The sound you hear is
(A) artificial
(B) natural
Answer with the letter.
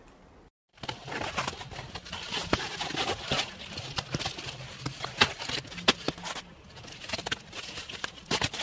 B